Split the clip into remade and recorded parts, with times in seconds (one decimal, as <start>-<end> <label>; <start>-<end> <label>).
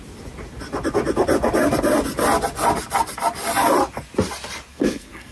0.0-4.7 recorded; 4.7-5.3 remade